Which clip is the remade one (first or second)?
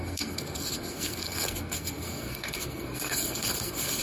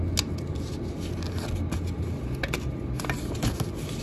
first